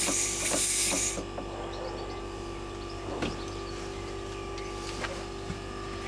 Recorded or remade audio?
recorded